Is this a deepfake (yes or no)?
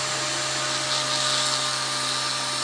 no